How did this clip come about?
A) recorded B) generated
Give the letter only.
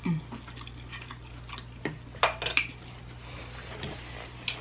A